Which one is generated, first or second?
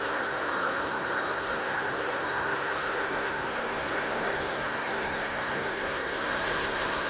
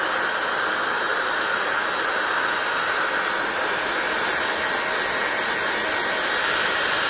first